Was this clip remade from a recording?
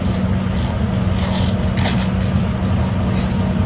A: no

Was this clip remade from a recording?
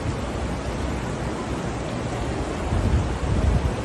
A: no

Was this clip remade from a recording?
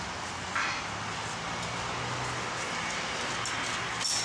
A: no